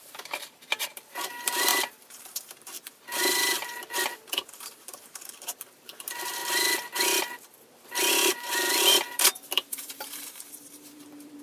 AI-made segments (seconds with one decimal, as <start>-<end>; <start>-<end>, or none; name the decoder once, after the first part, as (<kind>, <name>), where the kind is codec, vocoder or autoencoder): 0.0-6.4 (vocoder, BigVGAN v2); 8.1-11.4